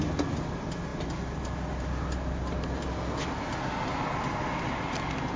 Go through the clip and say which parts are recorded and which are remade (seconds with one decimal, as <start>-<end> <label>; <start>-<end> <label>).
0.0-5.4 recorded